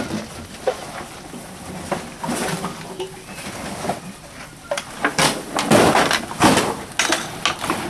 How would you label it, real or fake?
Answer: real